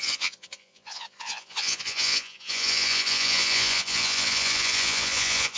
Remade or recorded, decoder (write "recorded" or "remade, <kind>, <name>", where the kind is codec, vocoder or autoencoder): remade, vocoder, Vocos